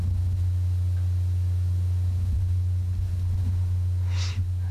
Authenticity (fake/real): real